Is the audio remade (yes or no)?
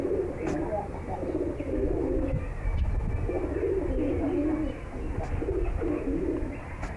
no